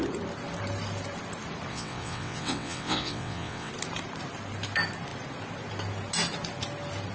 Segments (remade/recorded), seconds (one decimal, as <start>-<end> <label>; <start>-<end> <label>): 0.0-1.7 recorded; 1.7-3.7 remade; 3.7-7.1 recorded